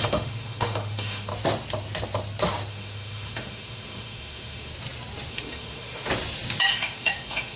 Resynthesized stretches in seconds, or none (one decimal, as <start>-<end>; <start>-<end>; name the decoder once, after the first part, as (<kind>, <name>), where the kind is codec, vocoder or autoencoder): 0.0-1.3 (autoencoder, DAC-VAE); 2.7-4.7; 5.3-6.1; 6.6-7.6